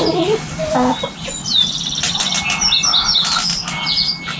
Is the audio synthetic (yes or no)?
no